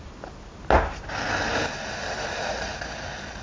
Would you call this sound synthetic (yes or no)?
no